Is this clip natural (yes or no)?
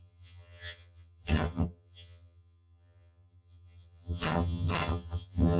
no